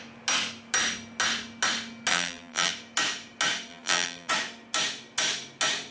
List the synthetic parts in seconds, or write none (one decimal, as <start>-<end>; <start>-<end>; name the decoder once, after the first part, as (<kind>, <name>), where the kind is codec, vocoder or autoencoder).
2.1-2.7 (vocoder, BigVGAN v2); 3.7-4.3